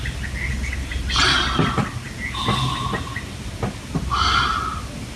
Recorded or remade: recorded